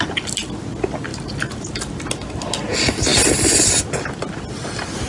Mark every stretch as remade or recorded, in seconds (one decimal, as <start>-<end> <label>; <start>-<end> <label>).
0.0-1.1 recorded; 1.1-1.9 remade; 1.9-5.1 recorded